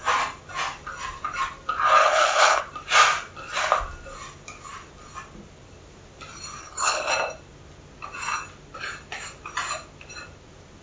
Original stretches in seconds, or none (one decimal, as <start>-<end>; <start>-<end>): 0.0-2.0; 2.6-6.6; 7.1-10.8